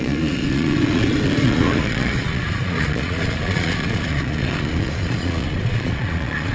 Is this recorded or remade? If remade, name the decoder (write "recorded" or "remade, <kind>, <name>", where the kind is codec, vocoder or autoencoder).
remade, vocoder, Vocos